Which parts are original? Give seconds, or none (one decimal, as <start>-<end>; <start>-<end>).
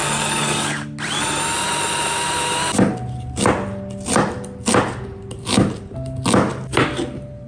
0.8-7.5